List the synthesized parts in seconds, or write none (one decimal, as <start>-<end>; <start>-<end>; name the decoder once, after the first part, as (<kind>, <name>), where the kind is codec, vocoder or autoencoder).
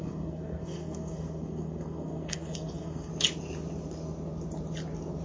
0.0-3.1 (codec, SNAC)